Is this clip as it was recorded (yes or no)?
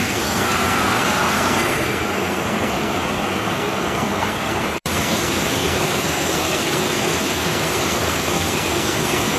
no